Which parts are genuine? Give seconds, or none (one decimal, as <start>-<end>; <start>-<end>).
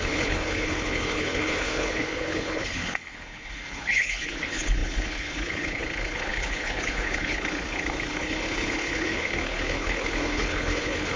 none